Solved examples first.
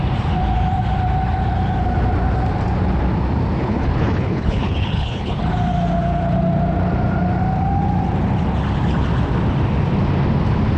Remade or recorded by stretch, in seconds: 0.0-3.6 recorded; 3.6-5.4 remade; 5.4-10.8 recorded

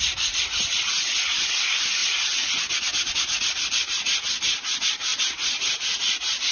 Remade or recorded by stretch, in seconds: 0.0-6.5 recorded